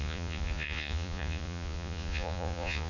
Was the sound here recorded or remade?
remade